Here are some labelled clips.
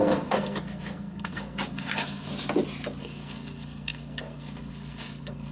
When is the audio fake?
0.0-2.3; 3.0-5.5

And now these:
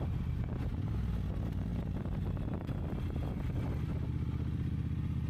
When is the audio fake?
none